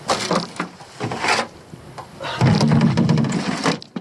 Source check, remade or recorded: recorded